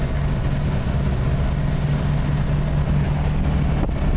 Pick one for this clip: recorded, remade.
recorded